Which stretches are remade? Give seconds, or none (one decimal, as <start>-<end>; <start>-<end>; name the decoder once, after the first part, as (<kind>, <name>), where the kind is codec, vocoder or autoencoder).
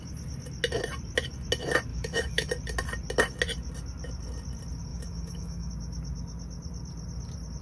1.9-2.5 (autoencoder, DAC-VAE); 4.9-5.7